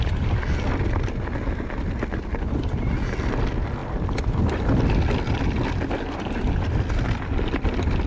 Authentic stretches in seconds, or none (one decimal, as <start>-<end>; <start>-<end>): 0.0-8.1